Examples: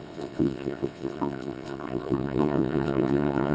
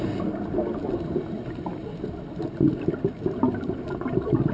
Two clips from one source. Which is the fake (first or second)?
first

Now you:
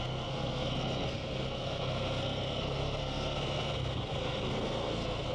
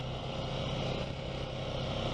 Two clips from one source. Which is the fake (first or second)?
first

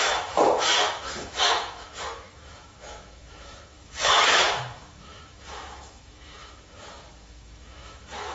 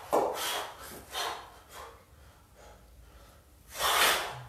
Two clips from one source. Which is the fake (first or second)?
first